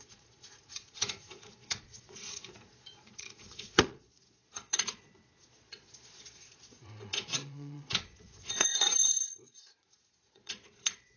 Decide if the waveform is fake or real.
fake